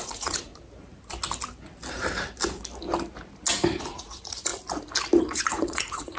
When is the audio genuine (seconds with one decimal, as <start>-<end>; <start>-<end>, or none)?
0.5-3.8; 4.5-5.2